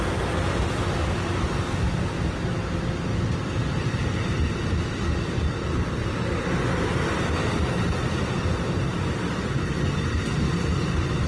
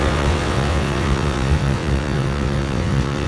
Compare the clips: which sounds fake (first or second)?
second